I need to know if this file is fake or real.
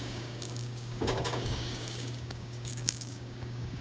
fake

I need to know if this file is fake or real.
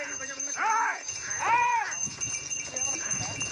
fake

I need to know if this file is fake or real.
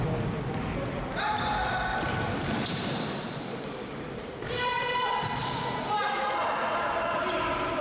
real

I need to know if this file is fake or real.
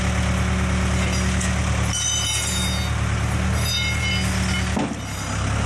real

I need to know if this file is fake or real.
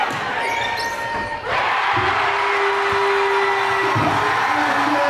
real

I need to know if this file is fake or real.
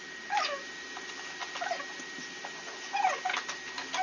real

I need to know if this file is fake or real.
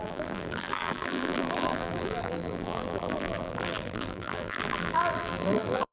fake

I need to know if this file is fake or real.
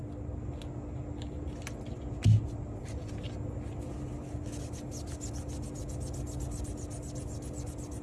real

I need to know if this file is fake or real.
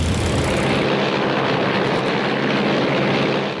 real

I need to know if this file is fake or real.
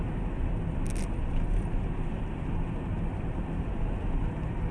real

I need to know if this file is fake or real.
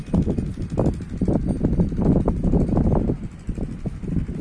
real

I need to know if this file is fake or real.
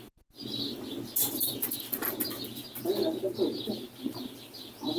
real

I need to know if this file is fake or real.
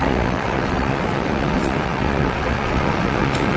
fake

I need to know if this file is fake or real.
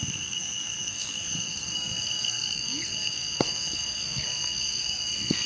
fake